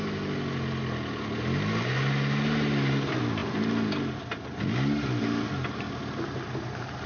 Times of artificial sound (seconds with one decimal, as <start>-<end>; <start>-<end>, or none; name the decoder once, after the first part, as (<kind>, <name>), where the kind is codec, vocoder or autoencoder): none